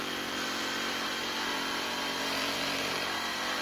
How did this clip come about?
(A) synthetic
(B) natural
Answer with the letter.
A